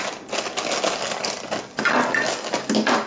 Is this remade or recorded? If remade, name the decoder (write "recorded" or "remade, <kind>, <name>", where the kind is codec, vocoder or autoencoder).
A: recorded